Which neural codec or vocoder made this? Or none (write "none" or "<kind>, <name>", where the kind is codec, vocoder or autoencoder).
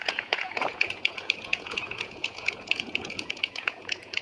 vocoder, Vocos